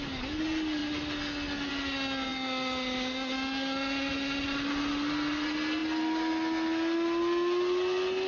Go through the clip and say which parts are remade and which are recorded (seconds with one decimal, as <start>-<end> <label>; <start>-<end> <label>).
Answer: 0.0-8.3 recorded